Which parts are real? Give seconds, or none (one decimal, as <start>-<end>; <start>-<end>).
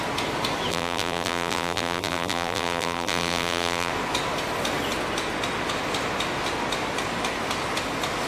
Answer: 0.0-0.7; 3.9-8.3